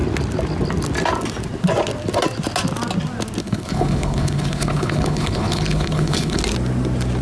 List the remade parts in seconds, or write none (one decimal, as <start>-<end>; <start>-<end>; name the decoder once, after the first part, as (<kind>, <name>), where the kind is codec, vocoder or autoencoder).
3.4-6.4 (codec, HILCodec)